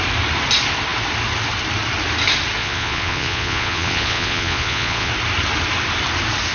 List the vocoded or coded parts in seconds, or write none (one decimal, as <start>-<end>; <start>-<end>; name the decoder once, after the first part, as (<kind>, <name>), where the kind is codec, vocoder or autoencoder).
2.6-5.1 (vocoder, Vocos)